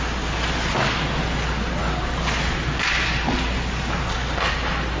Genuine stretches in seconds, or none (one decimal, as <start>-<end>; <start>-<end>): 0.0-5.0